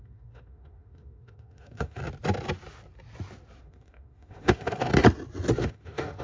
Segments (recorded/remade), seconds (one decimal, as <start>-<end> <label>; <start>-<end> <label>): 0.0-2.0 remade; 2.0-3.6 recorded; 3.6-4.9 remade; 4.9-5.6 recorded; 5.6-6.2 remade